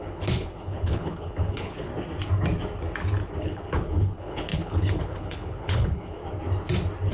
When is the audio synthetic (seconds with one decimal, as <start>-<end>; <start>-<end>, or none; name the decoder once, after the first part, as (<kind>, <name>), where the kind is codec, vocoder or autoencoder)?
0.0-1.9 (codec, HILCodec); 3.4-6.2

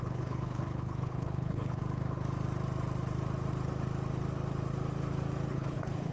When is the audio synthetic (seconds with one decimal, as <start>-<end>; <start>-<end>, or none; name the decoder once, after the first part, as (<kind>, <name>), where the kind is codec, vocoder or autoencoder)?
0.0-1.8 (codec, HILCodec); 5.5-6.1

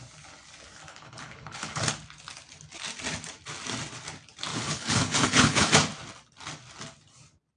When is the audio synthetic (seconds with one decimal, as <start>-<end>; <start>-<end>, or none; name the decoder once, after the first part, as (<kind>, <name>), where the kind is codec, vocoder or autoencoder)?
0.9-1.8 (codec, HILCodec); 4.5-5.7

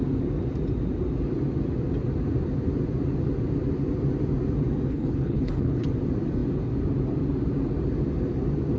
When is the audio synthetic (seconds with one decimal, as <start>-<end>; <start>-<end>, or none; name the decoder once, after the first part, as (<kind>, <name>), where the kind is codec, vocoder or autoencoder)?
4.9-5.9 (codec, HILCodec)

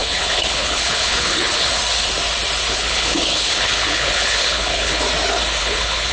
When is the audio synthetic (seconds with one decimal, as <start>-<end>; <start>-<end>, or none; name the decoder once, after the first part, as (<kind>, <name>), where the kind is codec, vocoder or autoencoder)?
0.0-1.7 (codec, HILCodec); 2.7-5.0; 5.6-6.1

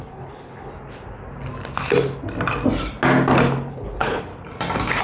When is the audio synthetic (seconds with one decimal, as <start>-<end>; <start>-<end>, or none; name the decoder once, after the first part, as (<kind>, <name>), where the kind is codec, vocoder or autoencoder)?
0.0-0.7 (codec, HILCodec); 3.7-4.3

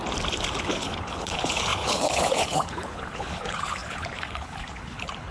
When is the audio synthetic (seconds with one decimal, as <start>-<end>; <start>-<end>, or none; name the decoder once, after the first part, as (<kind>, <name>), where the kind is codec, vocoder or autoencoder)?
0.7-5.3 (codec, HILCodec)